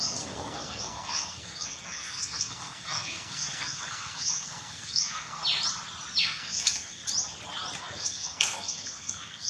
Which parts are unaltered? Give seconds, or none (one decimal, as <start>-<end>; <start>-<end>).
5.4-6.2; 7.0-7.8